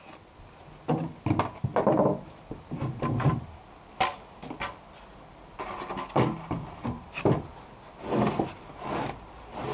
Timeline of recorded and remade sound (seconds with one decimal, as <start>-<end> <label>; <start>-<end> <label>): 0.0-9.7 recorded